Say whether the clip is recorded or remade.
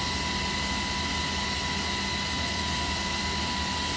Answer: recorded